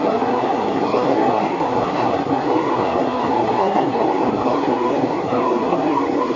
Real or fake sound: fake